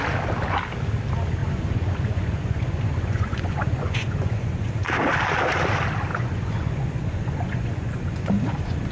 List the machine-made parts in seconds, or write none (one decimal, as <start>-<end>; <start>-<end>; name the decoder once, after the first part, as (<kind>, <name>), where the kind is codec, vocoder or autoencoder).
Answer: 1.4-4.7 (vocoder, Vocos); 6.1-8.9